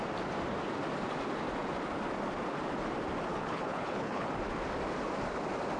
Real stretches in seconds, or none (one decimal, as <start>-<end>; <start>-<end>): 0.0-3.3; 4.3-5.8